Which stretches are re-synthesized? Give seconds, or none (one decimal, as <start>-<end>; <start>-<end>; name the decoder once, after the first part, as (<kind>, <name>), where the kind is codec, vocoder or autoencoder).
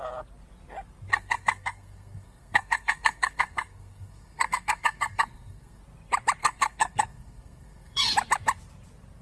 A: 1.1-5.8 (codec, SNAC); 6.4-8.1